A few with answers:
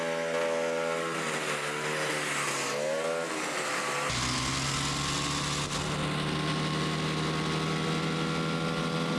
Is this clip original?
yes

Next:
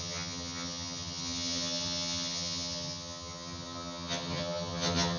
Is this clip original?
no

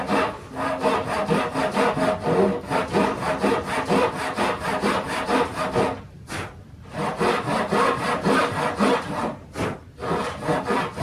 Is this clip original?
yes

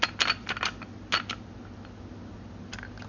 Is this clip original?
yes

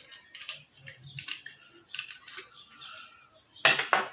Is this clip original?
yes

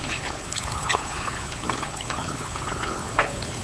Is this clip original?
no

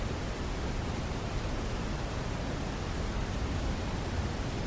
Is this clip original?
yes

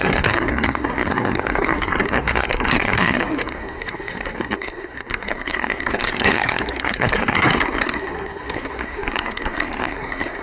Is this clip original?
no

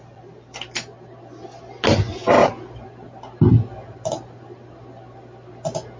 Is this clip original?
yes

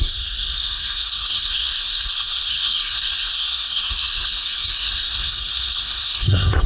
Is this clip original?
no